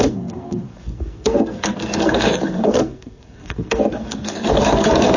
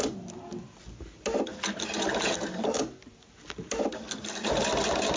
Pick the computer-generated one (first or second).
first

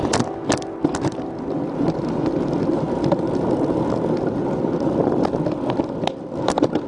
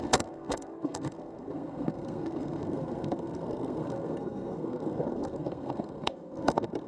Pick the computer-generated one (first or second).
second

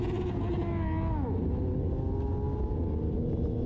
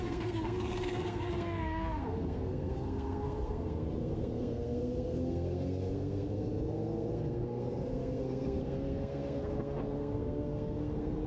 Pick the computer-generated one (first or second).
second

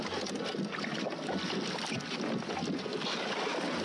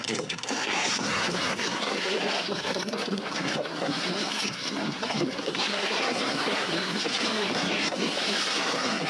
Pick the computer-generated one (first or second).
second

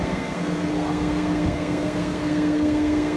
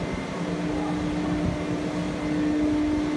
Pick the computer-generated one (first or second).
first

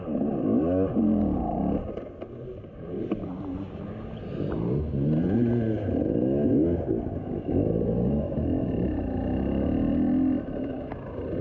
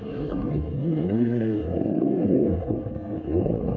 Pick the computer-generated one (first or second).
second